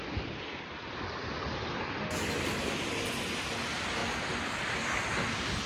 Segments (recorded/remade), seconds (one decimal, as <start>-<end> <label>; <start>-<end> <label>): 0.0-5.7 recorded